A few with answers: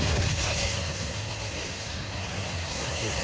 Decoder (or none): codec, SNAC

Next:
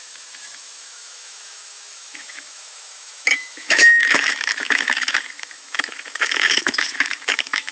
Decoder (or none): autoencoder, DAC-VAE